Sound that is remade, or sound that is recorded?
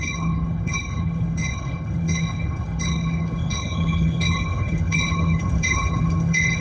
remade